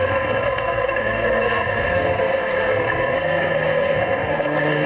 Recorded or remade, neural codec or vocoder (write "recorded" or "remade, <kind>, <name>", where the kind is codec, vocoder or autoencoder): remade, codec, SNAC